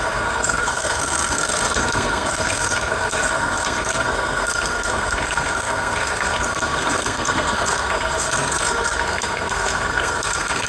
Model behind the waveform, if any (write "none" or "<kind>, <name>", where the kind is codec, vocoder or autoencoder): codec, SNAC